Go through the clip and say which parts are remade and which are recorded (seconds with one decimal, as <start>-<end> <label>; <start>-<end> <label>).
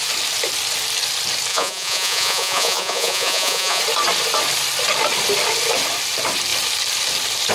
0.0-1.5 recorded; 1.5-3.8 remade; 3.8-7.5 recorded